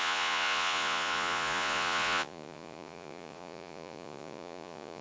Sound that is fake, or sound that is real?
fake